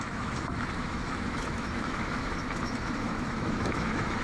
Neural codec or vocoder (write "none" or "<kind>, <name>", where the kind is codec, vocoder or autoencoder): autoencoder, DAC-VAE